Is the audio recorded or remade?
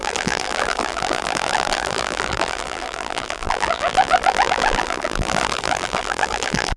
remade